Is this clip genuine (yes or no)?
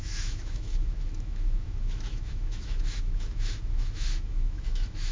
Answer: no